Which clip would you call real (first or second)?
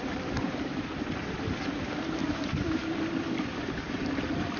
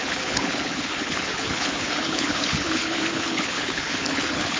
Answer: first